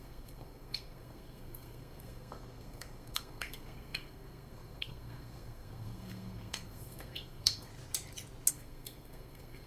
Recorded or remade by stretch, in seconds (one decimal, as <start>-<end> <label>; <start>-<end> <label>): 0.0-7.7 remade; 7.7-8.5 recorded; 8.5-9.7 remade

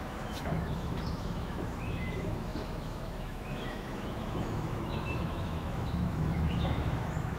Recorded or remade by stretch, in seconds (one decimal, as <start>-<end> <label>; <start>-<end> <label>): 0.0-7.4 remade

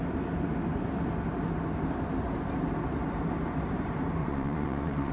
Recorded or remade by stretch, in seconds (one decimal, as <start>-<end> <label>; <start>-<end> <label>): 0.0-4.2 recorded; 4.2-5.1 remade

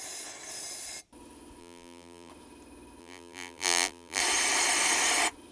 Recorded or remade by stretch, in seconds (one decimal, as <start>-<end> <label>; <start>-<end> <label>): 0.0-1.6 recorded; 1.6-2.3 remade; 2.3-3.0 recorded; 3.0-4.2 remade; 4.2-5.5 recorded

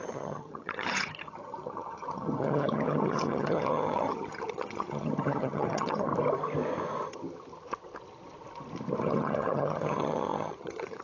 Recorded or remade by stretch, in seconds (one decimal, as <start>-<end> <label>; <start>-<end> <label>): 0.0-6.1 remade; 6.1-9.0 recorded; 9.0-11.0 remade

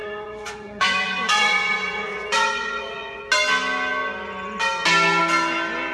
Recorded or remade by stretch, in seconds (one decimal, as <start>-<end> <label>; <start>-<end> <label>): 0.0-3.2 remade; 3.2-5.9 recorded